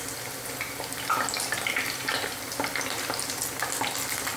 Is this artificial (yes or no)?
no